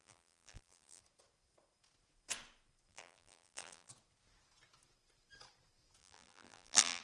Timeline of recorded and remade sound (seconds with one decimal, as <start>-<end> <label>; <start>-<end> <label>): 0.0-1.0 remade; 1.0-2.9 recorded; 2.9-3.9 remade; 3.9-6.0 recorded; 6.0-7.0 remade